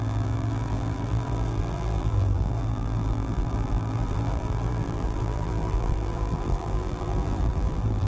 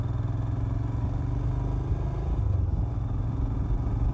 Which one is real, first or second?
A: second